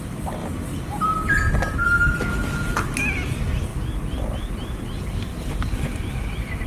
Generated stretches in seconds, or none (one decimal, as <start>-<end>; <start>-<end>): 5.3-6.7